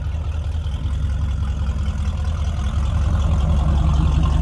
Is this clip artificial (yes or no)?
no